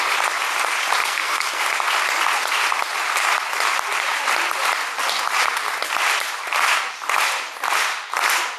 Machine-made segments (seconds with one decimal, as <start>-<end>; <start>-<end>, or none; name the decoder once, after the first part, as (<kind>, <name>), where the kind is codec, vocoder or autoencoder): 1.0-1.6 (codec, SNAC)